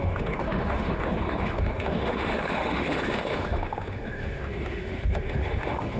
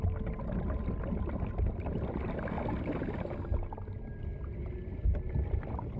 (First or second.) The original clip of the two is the second